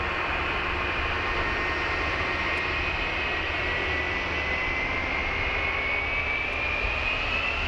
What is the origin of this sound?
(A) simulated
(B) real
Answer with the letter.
B